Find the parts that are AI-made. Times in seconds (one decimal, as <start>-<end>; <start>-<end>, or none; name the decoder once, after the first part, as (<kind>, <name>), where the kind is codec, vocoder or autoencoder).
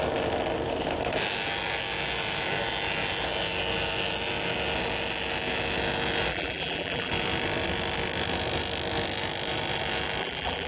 6.3-7.1 (vocoder, BigVGAN v2); 10.2-10.7